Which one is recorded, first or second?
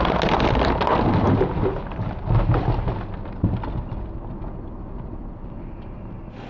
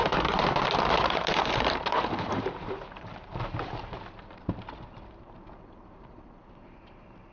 first